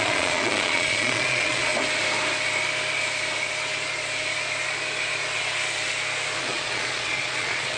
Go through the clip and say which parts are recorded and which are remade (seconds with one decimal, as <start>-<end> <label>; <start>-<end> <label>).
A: 0.0-1.7 remade; 1.7-6.4 recorded; 6.4-7.8 remade